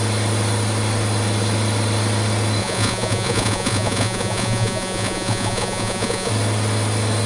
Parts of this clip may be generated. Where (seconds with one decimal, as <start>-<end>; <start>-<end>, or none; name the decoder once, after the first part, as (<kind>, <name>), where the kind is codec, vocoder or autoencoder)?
2.6-6.3 (vocoder, Vocos)